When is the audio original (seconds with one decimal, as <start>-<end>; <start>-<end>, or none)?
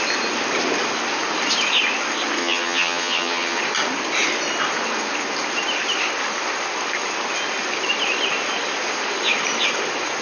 0.0-2.4; 3.6-10.2